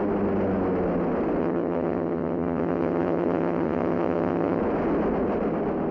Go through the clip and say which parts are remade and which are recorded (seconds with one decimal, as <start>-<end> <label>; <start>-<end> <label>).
0.0-1.4 recorded; 1.4-4.6 remade; 4.6-5.9 recorded